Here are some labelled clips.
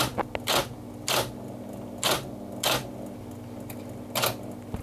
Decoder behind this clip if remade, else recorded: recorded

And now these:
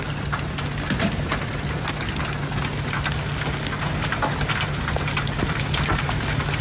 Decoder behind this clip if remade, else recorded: recorded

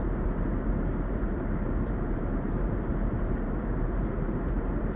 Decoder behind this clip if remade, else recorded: remade, vocoder, BigVGAN v2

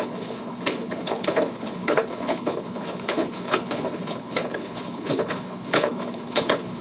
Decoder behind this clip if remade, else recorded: remade, codec, HILCodec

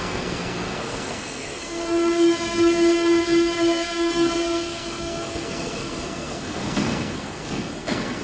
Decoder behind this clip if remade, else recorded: remade, codec, SNAC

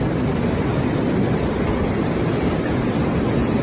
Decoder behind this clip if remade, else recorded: recorded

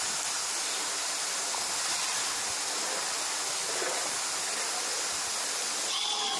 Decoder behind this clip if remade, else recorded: recorded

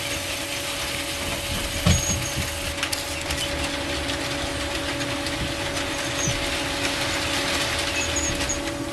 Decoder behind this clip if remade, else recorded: recorded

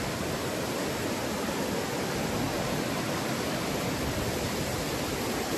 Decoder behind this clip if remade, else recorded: recorded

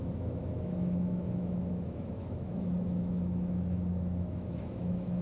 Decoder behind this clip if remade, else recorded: remade, autoencoder, DAC-VAE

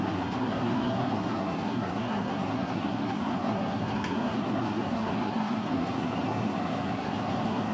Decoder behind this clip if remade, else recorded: remade, codec, SNAC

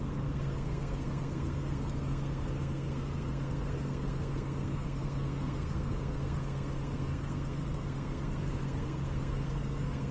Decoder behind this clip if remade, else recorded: remade, codec, SNAC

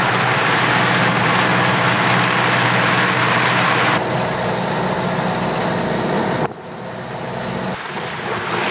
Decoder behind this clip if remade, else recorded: recorded